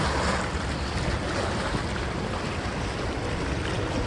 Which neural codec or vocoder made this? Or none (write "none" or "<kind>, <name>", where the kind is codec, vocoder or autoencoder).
none